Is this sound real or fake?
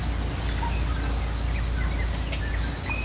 real